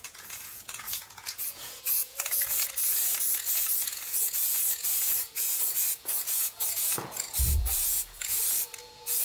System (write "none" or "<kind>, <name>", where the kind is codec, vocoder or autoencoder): vocoder, Vocos